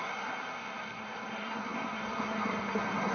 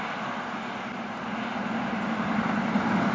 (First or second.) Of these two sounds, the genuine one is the second